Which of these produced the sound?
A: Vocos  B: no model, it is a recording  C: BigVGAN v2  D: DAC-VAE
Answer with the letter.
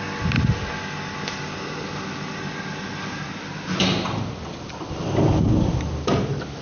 B